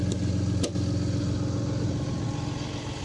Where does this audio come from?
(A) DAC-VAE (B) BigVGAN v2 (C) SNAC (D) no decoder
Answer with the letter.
D